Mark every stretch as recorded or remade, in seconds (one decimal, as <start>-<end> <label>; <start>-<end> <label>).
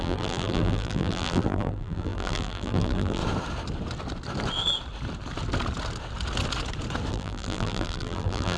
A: 0.0-3.2 remade; 3.2-7.1 recorded; 7.1-8.6 remade